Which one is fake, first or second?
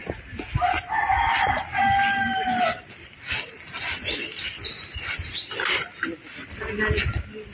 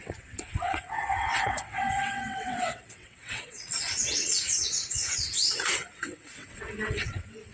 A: second